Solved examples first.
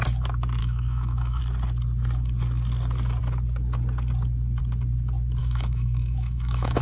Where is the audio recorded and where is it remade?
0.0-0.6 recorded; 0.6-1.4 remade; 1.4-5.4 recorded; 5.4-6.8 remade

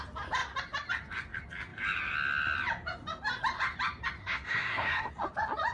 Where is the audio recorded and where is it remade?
0.0-4.2 recorded; 4.2-5.1 remade; 5.1-5.7 recorded

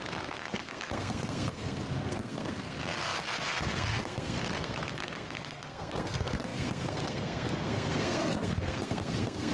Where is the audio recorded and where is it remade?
0.0-9.5 remade

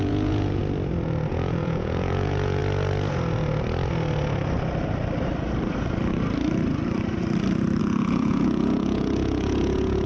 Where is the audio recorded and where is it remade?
0.0-0.6 remade; 0.6-1.3 recorded; 1.3-2.6 remade; 2.6-7.8 recorded; 7.8-10.1 remade

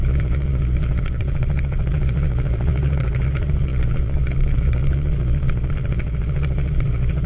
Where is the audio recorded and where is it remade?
0.0-7.3 remade

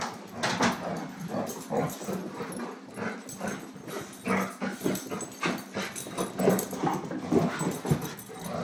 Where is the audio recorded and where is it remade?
0.0-8.6 recorded